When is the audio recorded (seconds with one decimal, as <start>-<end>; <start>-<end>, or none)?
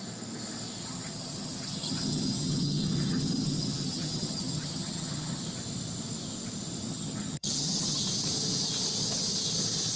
0.0-0.8; 5.4-6.9; 8.0-10.0